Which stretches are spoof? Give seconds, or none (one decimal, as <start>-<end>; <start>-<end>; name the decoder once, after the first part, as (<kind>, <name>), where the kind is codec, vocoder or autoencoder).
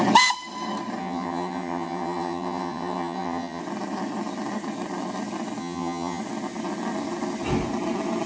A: 1.0-3.6 (vocoder, HiFi-GAN); 5.6-6.2